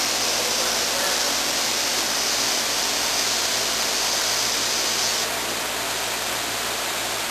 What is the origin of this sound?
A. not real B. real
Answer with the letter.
B